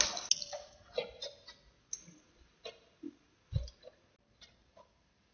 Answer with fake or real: real